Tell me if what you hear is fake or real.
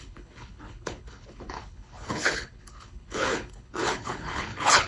fake